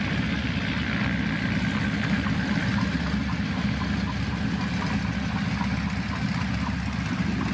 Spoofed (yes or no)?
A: no